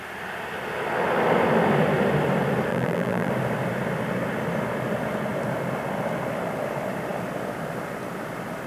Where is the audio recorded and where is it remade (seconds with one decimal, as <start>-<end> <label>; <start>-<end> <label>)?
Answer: 0.0-2.7 recorded; 2.7-3.3 remade; 3.3-8.7 recorded